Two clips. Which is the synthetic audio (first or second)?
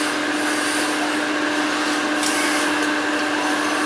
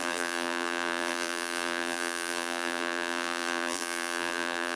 second